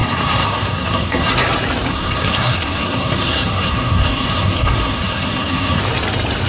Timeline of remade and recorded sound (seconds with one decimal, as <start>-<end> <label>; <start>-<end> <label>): 0.0-1.3 remade; 1.3-1.9 recorded; 1.9-5.8 remade; 5.8-6.5 recorded